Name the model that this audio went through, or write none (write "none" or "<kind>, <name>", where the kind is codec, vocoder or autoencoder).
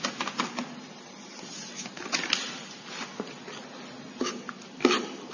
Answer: none